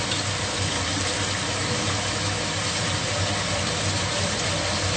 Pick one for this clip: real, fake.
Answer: real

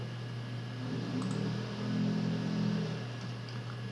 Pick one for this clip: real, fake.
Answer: real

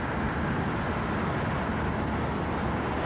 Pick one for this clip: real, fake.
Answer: real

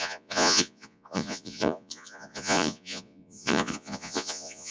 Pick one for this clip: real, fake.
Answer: fake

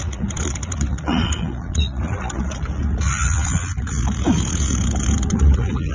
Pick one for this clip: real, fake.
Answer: fake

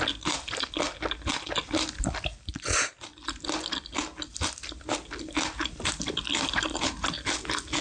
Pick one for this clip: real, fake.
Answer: real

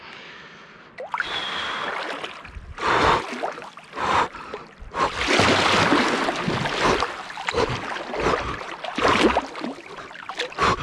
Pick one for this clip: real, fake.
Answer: real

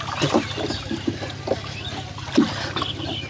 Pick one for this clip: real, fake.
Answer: real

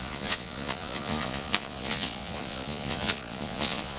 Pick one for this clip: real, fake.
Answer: fake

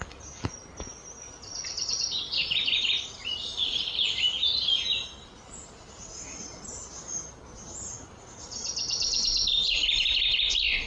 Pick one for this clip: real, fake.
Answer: real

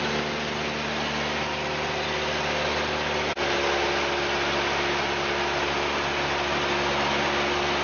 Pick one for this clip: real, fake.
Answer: real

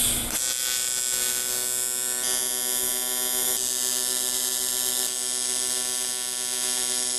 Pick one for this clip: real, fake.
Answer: real